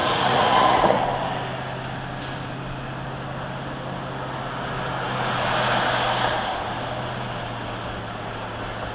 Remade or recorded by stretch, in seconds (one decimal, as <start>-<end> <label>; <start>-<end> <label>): 0.0-1.0 remade; 1.0-8.9 recorded